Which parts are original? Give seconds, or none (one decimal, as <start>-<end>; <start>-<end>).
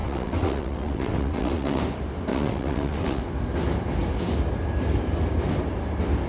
1.8-2.3; 3.2-6.3